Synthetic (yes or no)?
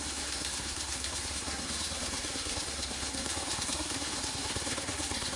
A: yes